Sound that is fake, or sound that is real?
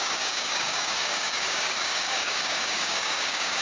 fake